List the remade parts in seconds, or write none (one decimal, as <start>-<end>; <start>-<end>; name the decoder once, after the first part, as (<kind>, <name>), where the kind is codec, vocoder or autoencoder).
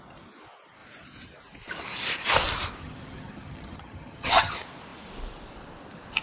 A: 2.8-4.5 (vocoder, HiFi-GAN)